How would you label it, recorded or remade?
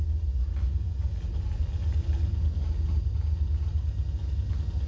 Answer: recorded